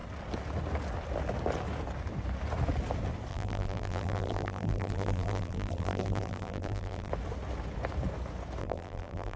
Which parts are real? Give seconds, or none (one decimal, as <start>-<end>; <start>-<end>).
0.0-3.3; 7.1-8.6